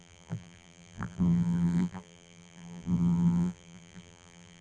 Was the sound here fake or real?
fake